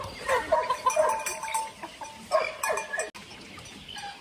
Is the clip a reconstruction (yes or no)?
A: no